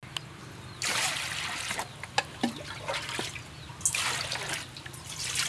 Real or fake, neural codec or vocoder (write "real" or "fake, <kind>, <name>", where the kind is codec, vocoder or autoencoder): real